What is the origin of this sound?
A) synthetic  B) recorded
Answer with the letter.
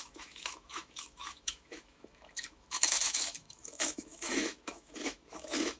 A